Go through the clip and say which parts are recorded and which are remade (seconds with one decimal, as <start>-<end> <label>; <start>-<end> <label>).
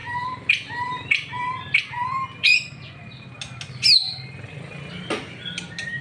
0.0-2.4 recorded; 2.4-3.0 remade; 3.0-6.0 recorded